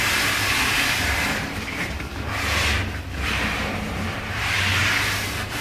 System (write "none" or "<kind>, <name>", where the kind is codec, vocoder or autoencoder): vocoder, BigVGAN v2